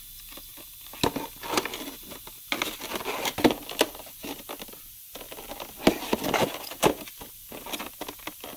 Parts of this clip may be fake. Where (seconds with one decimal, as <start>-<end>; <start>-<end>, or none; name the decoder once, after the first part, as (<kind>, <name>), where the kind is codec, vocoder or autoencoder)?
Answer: none